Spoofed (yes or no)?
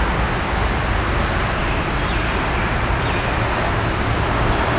no